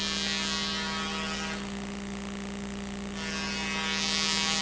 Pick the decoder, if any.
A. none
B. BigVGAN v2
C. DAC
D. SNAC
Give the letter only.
A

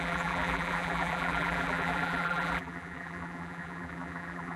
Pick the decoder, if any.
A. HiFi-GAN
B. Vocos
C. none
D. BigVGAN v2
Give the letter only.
D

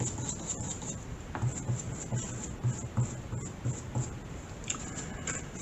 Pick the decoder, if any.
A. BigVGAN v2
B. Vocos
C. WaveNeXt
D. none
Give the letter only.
D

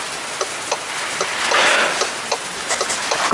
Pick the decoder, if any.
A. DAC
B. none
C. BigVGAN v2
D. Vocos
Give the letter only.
B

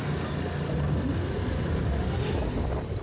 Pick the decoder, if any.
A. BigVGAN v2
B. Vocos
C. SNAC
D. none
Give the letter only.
D